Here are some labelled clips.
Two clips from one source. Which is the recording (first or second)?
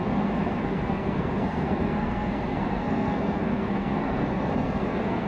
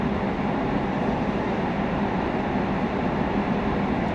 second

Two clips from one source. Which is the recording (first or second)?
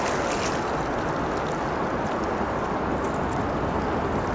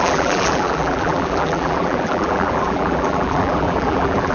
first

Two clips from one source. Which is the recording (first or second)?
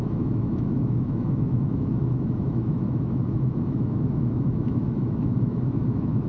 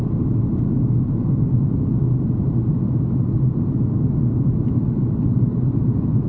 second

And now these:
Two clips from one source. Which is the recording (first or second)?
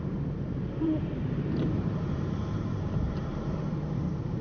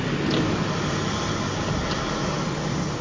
second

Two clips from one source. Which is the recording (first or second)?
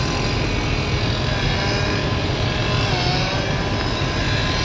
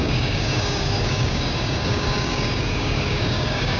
first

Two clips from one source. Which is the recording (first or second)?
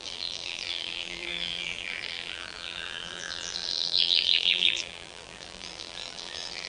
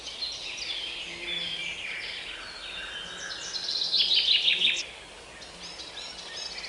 second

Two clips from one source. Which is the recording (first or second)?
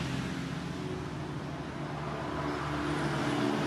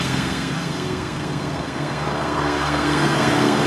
first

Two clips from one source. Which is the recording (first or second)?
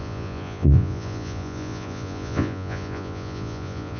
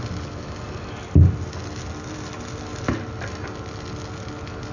second